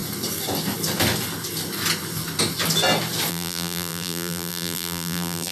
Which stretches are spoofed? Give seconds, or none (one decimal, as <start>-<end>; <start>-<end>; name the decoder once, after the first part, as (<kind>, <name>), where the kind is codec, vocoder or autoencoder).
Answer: 3.3-5.5 (vocoder, BigVGAN v2)